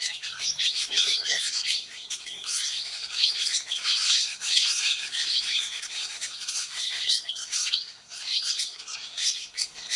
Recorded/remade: remade